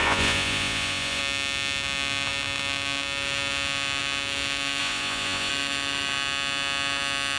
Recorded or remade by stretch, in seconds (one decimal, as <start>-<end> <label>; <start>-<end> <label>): 0.0-1.2 remade; 1.2-4.8 recorded; 4.8-5.5 remade; 5.5-7.4 recorded